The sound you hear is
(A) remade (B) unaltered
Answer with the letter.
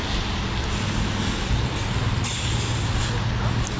B